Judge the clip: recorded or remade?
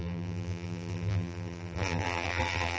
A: remade